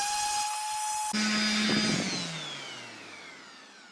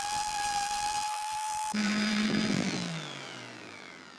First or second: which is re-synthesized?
second